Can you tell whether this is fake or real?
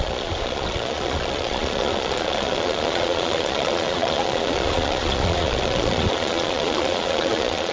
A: fake